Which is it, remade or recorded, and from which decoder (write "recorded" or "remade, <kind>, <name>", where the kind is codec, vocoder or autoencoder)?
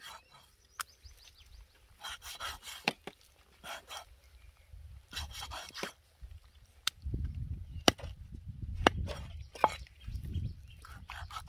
remade, vocoder, BigVGAN v2